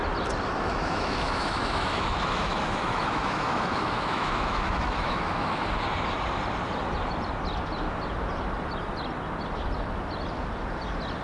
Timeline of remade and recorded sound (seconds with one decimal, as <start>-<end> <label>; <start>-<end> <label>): 0.0-0.6 recorded; 0.6-5.5 remade; 5.5-11.2 recorded